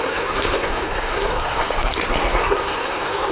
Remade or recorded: remade